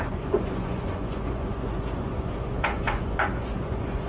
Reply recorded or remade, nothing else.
remade